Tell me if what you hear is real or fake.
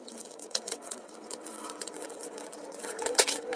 fake